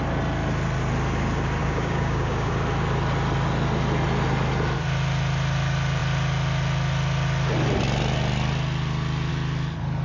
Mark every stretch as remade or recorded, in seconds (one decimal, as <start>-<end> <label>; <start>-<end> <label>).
0.0-1.6 recorded; 1.6-2.5 remade; 2.5-10.0 recorded